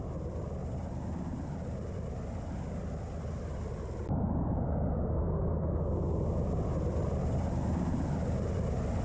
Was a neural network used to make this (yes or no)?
no